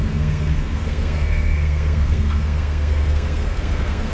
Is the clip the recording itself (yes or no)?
no